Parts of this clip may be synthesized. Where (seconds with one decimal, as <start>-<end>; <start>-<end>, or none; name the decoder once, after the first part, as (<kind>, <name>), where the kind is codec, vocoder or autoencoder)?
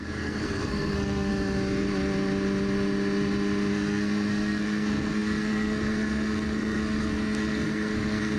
0.0-1.3 (codec, SNAC); 3.7-8.4